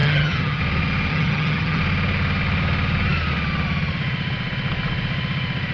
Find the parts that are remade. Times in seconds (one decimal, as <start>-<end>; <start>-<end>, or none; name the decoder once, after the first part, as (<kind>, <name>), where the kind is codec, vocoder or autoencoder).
0.0-0.6 (vocoder, HiFi-GAN); 1.1-1.8